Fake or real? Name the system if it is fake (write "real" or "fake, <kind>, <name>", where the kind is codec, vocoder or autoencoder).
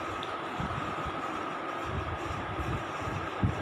fake, vocoder, BigVGAN v2